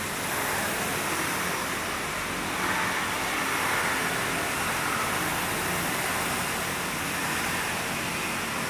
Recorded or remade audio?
recorded